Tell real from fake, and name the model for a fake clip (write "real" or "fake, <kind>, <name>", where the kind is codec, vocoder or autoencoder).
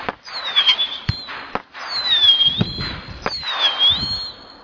real